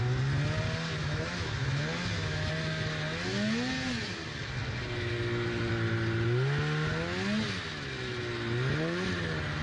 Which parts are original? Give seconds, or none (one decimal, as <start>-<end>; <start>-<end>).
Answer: 0.0-1.0; 2.5-9.6